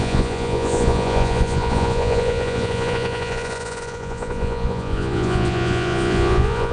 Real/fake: fake